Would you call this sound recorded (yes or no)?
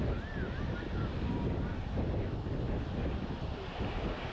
yes